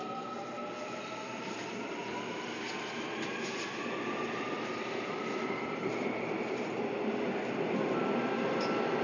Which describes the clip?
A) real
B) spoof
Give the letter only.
A